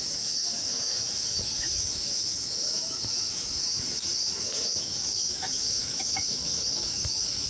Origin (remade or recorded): remade